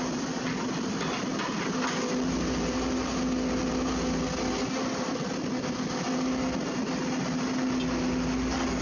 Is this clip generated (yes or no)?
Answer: no